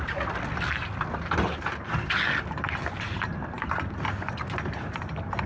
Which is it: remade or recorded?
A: recorded